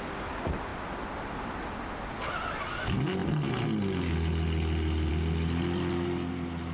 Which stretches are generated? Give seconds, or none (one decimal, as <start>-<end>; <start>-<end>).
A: none

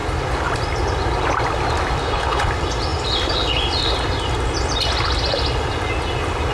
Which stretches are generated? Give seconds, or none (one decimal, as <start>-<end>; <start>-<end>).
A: 2.0-2.5

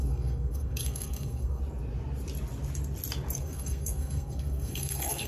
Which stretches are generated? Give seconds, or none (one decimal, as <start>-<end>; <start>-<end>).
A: 0.0-1.6; 3.4-5.3

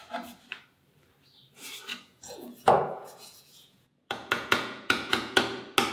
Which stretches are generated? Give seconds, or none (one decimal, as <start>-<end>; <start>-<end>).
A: 1.9-5.4